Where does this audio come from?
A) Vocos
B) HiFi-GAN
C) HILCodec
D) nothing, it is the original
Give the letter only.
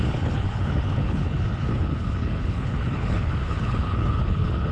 C